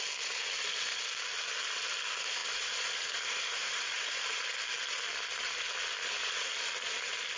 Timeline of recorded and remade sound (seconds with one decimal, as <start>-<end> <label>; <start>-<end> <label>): 0.0-2.4 recorded; 2.4-4.5 remade; 4.5-6.2 recorded; 6.2-6.7 remade; 6.7-7.4 recorded